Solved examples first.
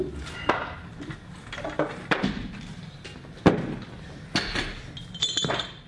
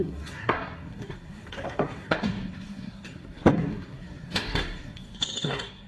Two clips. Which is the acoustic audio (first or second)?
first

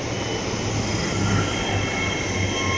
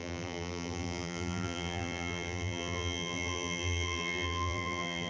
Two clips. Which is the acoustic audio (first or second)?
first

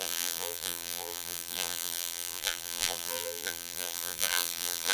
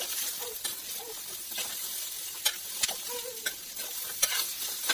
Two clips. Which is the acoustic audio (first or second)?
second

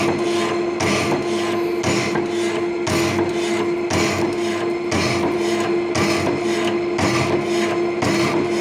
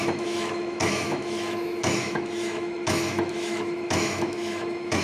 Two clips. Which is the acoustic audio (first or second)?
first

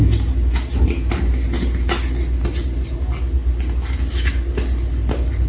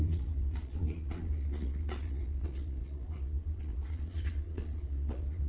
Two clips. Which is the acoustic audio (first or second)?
first